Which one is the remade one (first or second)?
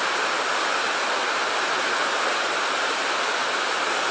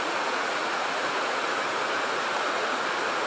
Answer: second